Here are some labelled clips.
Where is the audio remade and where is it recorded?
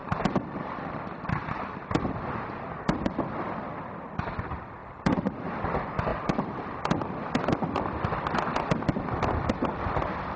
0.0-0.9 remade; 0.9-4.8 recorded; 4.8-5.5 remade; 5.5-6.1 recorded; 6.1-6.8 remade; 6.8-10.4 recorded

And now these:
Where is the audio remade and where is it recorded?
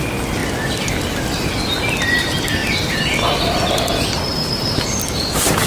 0.0-5.7 recorded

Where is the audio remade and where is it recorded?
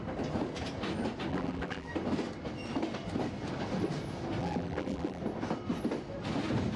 0.0-1.3 recorded; 1.3-1.9 remade; 1.9-4.4 recorded; 4.4-5.2 remade; 5.2-6.8 recorded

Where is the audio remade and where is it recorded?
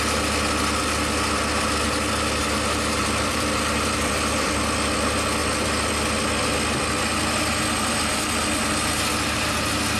0.0-3.0 recorded; 3.0-4.6 remade; 4.6-5.4 recorded; 5.4-5.9 remade; 5.9-10.0 recorded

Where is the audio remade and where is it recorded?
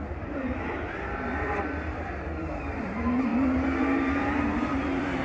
0.0-5.2 remade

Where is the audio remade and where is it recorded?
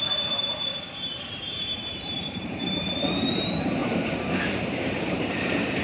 0.0-5.8 remade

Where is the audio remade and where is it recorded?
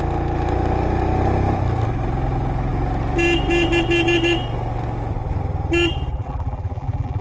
0.0-6.1 recorded; 6.1-7.2 remade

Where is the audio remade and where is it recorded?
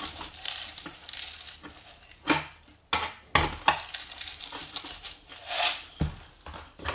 0.0-1.0 remade; 1.0-4.0 recorded; 4.0-5.4 remade; 5.4-6.9 recorded